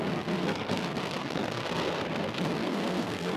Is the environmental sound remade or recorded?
remade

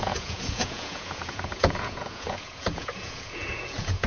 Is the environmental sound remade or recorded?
remade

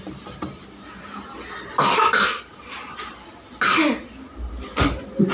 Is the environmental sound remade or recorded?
recorded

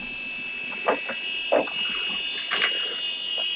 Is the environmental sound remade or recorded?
recorded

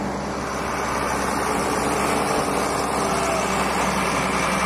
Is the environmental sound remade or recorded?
recorded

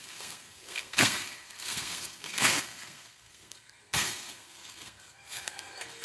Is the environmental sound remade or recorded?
remade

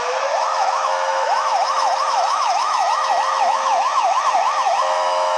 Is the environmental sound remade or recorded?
remade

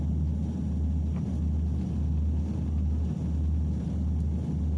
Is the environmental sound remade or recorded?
recorded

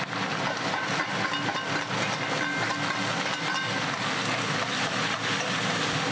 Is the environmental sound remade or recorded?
recorded